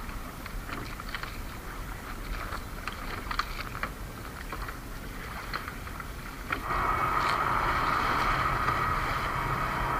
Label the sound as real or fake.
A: real